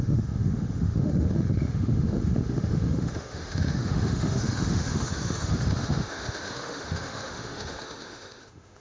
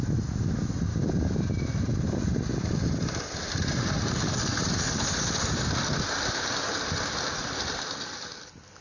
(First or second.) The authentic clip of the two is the second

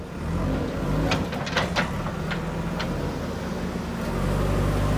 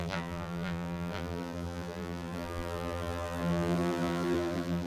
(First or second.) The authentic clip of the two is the first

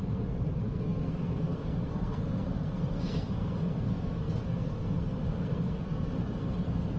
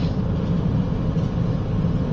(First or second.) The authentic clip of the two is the second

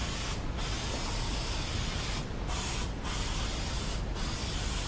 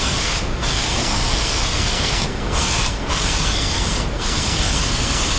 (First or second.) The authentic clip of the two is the first